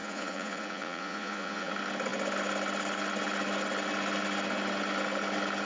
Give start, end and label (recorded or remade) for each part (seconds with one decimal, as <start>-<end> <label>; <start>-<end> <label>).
0.0-1.7 remade; 1.7-5.7 recorded